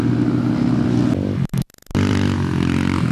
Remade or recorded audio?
recorded